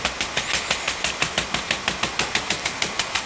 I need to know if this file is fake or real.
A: real